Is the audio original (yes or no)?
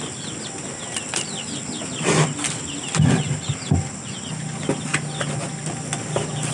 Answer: yes